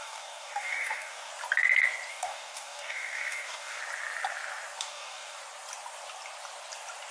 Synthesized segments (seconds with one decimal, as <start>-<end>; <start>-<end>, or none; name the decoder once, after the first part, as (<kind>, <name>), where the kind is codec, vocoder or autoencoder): 0.0-1.3 (codec, DAC); 2.1-3.8; 4.8-5.4